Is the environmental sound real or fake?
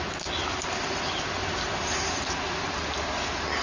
real